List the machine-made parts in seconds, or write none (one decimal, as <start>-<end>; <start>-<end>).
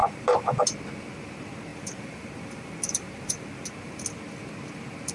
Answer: 0.0-0.6; 1.7-4.0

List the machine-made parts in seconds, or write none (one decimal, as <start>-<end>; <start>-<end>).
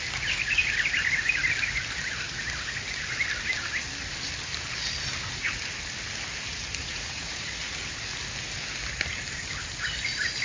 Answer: 6.8-7.5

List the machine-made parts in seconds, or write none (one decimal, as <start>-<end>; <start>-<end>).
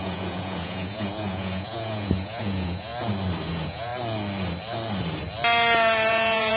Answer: 0.0-2.9; 3.5-3.9; 6.1-6.6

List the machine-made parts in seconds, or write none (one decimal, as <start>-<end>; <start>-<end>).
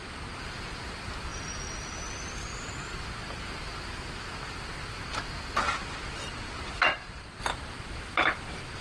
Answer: none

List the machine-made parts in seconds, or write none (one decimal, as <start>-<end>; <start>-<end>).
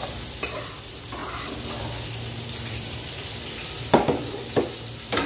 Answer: 0.0-5.3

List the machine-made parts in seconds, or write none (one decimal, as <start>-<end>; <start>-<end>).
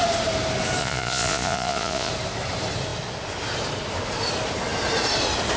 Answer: 0.8-2.1